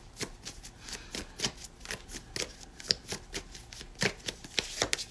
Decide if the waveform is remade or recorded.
recorded